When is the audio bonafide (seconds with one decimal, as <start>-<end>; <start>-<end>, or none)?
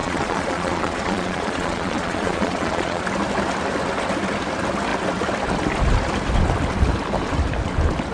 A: 3.0-8.1